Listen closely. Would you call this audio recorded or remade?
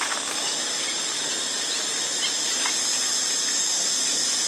recorded